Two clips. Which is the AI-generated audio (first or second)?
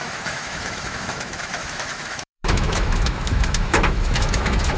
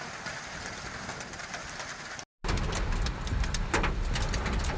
first